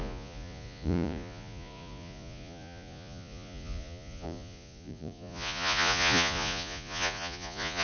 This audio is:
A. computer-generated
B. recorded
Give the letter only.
A